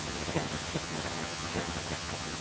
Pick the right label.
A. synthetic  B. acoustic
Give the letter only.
A